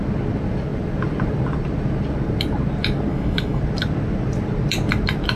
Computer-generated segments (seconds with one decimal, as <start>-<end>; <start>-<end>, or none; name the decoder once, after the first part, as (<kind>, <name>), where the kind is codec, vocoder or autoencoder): 3.1-3.6 (autoencoder, DAC-VAE)